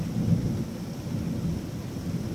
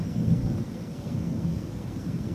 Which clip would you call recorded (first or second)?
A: first